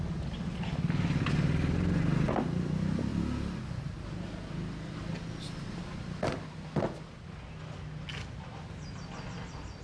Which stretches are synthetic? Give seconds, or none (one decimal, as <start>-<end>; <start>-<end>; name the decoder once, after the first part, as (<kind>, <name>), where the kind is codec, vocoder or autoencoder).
none